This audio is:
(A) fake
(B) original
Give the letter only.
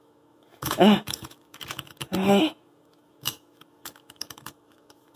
A